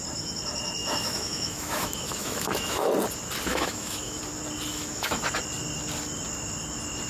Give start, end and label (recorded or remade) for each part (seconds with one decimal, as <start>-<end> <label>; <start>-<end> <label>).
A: 0.0-0.8 recorded; 0.8-2.9 remade; 2.9-3.5 recorded; 3.5-4.2 remade; 4.2-4.7 recorded; 4.7-5.2 remade; 5.2-7.1 recorded